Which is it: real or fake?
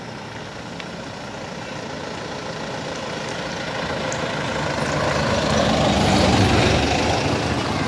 real